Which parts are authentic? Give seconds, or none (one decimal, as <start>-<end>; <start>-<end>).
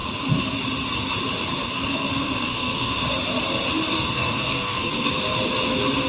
0.0-1.9; 3.0-3.9; 5.1-6.1